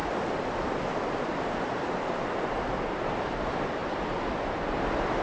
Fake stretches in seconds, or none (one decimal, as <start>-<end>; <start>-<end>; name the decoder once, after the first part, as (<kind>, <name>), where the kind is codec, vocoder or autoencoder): none